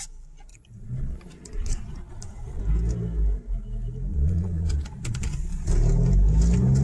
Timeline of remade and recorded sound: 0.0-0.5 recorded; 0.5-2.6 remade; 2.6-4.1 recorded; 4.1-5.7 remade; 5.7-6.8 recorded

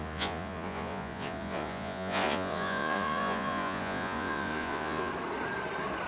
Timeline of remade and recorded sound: 0.0-5.1 remade; 5.1-6.1 recorded

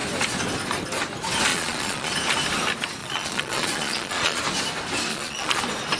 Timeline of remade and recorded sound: 0.0-1.5 recorded; 1.5-2.1 remade; 2.1-3.0 recorded; 3.0-4.4 remade; 4.4-5.1 recorded; 5.1-5.6 remade; 5.6-6.0 recorded

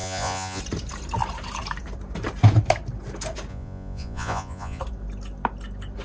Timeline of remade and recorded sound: 0.0-0.6 remade; 0.6-3.5 recorded; 3.5-4.8 remade; 4.8-6.0 recorded